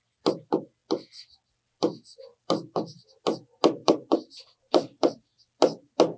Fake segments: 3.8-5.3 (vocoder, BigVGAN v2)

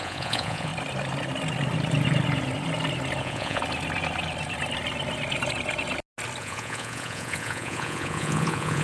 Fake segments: 0.0-0.7 (vocoder, Vocos); 3.2-3.6; 6.4-8.8